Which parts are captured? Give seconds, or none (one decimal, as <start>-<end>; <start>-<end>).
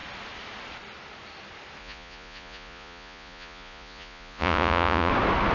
0.0-1.8; 5.1-5.5